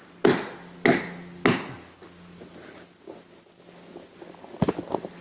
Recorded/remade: recorded